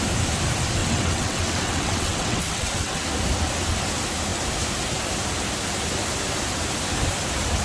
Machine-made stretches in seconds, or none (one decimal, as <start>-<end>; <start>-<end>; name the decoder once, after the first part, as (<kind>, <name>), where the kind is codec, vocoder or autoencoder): 0.8-3.0 (vocoder, WaveNeXt)